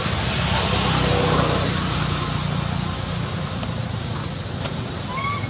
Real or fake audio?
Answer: real